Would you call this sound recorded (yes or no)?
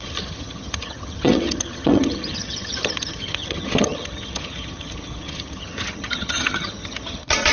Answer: no